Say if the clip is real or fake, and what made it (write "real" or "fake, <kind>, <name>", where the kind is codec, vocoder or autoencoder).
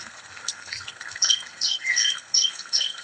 fake, codec, SNAC